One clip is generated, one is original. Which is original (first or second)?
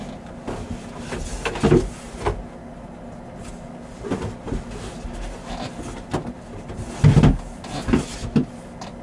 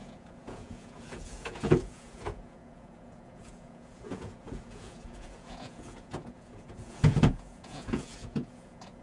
first